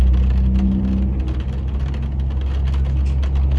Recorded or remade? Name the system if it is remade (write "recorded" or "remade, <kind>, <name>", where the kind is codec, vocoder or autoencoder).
recorded